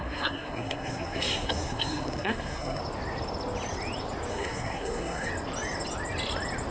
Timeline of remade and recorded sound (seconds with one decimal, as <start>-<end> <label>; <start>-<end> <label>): 0.0-2.8 remade; 2.8-4.3 recorded; 4.3-5.3 remade; 5.3-6.7 recorded